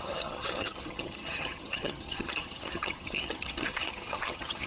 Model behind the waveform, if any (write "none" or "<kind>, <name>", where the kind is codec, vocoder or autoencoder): vocoder, HiFi-GAN